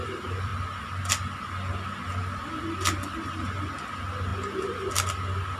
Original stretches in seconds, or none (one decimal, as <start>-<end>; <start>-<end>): 0.5-2.1